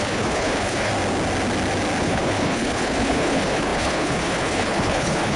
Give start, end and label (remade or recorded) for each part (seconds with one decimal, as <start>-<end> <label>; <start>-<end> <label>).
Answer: 0.0-0.9 remade; 0.9-2.0 recorded; 2.0-5.4 remade